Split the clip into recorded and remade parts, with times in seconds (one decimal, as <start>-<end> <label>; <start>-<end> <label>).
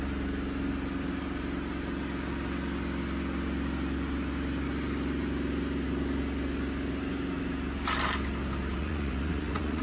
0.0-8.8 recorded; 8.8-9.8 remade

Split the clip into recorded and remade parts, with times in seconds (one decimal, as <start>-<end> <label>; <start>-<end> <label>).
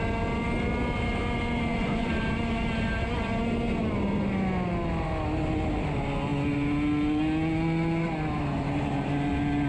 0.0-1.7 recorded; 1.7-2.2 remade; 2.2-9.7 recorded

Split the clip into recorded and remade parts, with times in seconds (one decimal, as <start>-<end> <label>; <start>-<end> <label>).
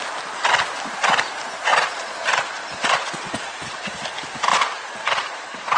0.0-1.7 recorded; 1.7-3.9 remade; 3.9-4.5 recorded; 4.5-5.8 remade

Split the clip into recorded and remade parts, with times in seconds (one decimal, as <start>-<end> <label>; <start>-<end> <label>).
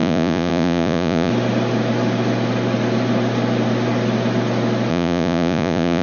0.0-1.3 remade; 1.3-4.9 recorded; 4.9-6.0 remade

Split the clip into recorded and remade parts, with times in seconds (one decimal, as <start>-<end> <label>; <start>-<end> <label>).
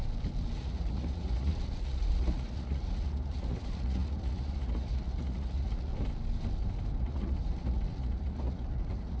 0.0-0.6 recorded; 0.6-5.9 remade; 5.9-7.0 recorded; 7.0-9.2 remade